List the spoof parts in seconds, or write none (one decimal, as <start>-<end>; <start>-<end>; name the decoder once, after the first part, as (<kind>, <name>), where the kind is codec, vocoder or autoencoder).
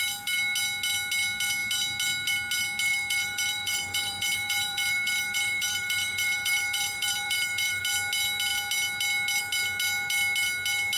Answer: 2.9-7.8 (vocoder, BigVGAN v2)